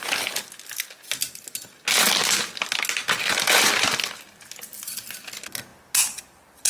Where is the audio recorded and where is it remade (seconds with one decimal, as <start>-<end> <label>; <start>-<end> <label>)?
0.0-6.7 recorded